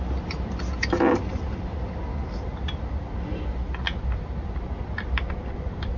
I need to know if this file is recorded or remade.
recorded